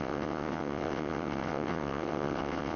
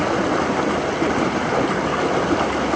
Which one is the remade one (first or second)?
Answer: first